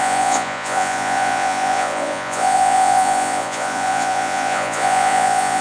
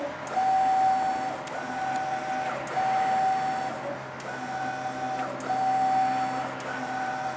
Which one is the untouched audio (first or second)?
second